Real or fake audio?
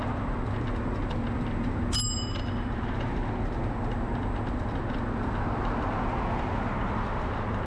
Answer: real